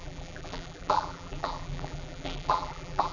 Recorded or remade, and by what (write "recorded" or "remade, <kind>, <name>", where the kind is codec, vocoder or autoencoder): remade, vocoder, BigVGAN v2